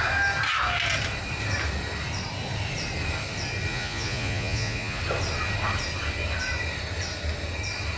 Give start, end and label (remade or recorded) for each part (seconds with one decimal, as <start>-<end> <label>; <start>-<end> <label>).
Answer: 0.0-3.7 recorded; 3.7-5.0 remade; 5.0-8.0 recorded